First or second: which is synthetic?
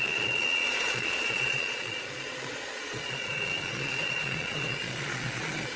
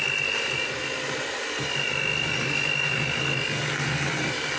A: first